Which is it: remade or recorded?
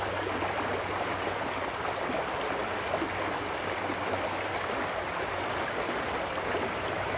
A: recorded